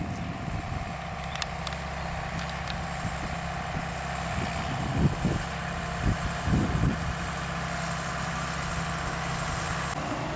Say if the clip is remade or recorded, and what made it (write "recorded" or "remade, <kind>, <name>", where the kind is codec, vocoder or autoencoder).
recorded